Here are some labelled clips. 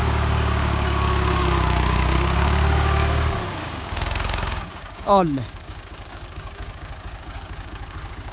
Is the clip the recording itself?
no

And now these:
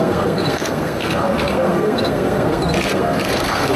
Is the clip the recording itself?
no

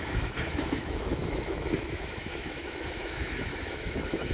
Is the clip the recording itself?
no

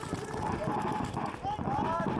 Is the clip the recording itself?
yes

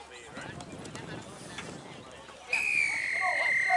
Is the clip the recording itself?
yes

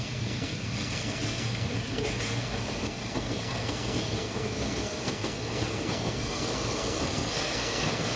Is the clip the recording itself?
no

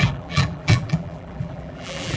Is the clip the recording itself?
no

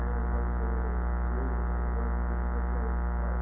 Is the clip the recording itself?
yes